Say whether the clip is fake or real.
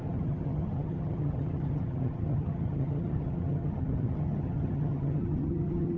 fake